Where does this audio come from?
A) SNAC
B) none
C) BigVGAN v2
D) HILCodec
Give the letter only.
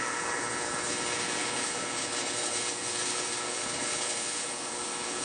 D